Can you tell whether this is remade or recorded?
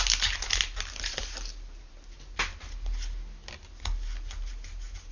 recorded